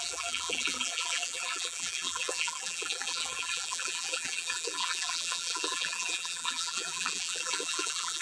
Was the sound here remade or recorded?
remade